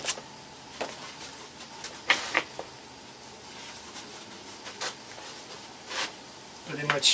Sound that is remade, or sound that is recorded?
recorded